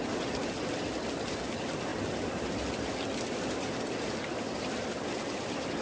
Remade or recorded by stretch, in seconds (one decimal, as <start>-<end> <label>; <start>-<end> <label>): 0.0-5.8 recorded